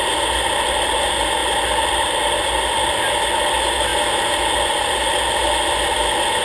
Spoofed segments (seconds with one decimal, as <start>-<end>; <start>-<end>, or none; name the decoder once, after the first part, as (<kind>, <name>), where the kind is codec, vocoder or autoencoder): none

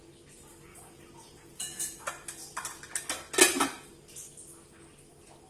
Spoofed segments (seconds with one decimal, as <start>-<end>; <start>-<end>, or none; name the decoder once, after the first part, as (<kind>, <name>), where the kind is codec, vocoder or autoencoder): 0.7-2.0 (vocoder, Vocos)

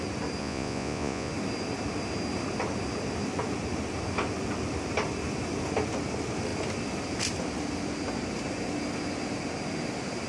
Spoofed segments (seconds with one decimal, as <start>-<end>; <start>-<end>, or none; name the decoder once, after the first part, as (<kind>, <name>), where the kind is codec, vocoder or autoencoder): 0.4-1.3 (vocoder, Vocos)

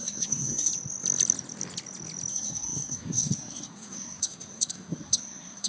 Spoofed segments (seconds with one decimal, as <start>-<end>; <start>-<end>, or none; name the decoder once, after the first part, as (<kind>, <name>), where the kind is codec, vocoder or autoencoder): 0.0-0.7 (codec, SNAC); 2.3-5.7

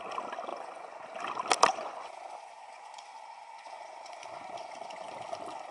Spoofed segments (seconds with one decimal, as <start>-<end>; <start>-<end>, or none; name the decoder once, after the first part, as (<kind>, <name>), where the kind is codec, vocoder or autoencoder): 0.5-1.1 (vocoder, Vocos); 1.7-5.1

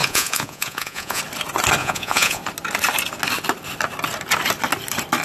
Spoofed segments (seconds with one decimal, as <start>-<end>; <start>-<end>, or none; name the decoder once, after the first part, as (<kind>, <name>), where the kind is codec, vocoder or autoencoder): 0.0-1.2 (vocoder, Vocos); 1.8-2.4

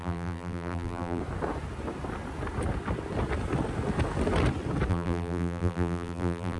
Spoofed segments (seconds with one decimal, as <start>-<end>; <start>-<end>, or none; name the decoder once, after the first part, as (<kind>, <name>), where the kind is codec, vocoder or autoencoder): 0.0-1.2 (vocoder, BigVGAN v2); 4.9-6.6

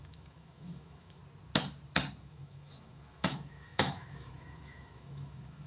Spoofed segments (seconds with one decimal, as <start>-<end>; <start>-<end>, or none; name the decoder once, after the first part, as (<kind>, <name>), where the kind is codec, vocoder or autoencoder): 0.0-1.2 (autoencoder, DAC-VAE); 2.2-5.7